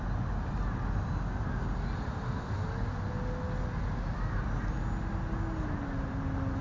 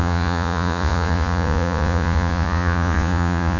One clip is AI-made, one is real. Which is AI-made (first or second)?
second